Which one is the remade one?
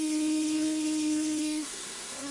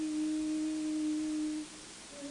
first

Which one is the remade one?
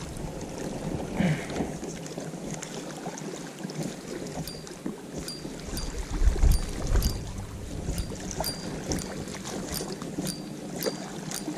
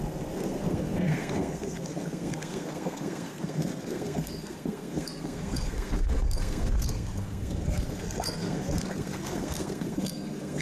second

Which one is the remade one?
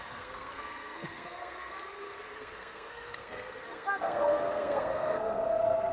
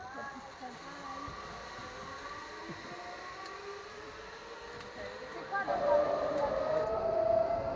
first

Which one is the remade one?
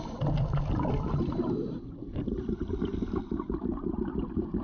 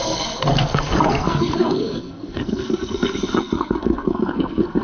second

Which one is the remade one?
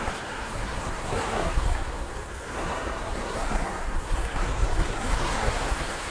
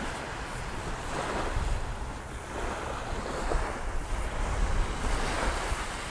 first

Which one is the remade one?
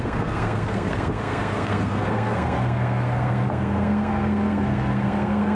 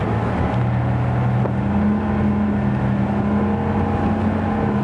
first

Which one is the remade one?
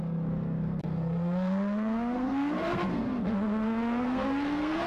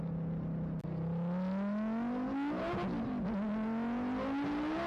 first